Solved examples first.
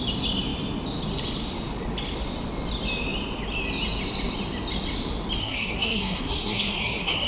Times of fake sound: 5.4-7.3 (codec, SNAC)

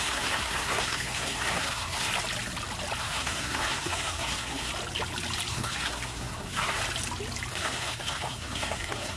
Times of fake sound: 0.0-2.1 (codec, SNAC); 3.0-4.7; 5.5-6.8; 7.5-9.2

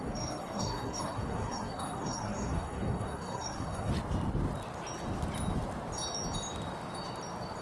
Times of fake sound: 0.0-3.9 (codec, SNAC)